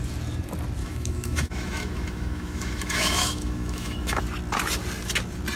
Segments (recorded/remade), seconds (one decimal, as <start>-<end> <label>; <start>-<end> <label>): 0.0-0.8 recorded; 0.8-4.2 remade; 4.2-5.6 recorded